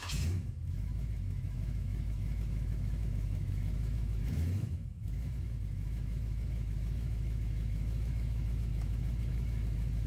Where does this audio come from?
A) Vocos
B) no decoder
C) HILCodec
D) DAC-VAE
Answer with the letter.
D